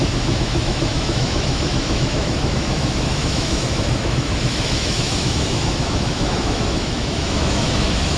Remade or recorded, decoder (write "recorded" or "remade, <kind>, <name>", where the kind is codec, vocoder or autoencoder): remade, autoencoder, DAC-VAE